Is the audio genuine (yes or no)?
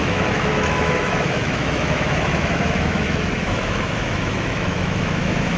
no